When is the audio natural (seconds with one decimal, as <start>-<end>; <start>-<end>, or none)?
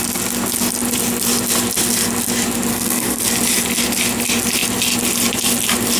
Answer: 0.0-2.7; 3.2-6.0